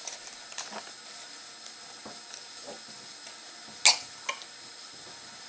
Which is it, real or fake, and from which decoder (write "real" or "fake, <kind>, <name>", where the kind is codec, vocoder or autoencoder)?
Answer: real